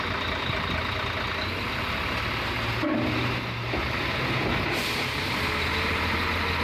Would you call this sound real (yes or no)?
yes